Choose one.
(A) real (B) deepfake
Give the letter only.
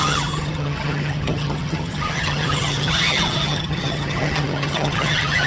B